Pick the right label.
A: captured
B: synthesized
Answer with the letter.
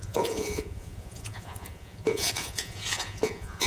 B